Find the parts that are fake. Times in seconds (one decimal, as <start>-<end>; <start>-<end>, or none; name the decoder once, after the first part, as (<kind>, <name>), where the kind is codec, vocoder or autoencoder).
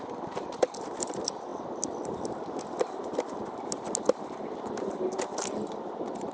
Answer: none